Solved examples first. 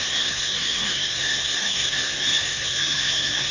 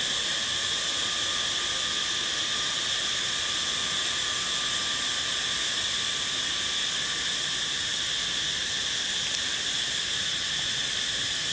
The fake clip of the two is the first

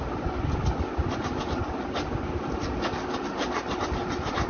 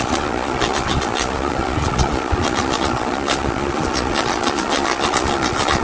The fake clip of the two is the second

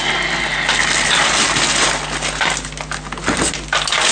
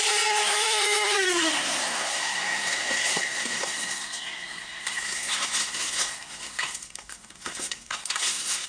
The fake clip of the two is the second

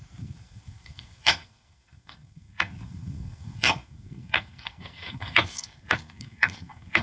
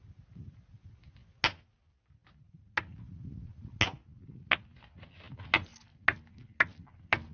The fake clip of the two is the first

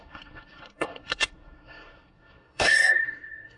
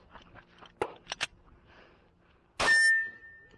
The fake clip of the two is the first